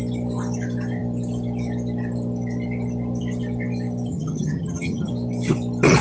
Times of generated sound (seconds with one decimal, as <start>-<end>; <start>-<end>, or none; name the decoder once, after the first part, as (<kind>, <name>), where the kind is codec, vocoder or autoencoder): 4.1-5.1 (vocoder, HiFi-GAN)